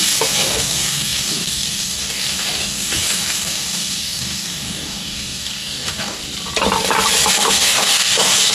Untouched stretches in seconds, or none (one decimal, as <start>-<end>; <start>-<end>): 6.2-7.3